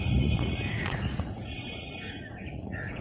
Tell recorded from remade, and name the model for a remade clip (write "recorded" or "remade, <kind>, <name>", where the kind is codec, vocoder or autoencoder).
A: remade, vocoder, Vocos